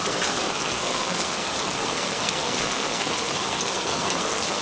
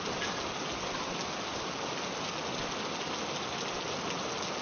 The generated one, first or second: first